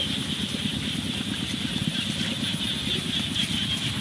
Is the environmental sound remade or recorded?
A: recorded